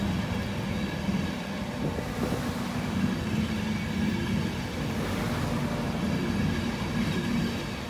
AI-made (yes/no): no